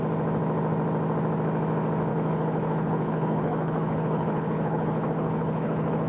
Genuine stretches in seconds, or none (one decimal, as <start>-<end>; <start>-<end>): 0.0-2.1